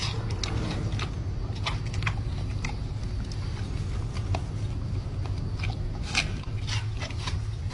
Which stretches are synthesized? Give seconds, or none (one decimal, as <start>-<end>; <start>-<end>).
none